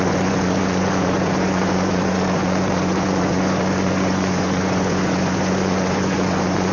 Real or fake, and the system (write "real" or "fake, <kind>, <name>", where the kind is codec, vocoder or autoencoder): fake, vocoder, Vocos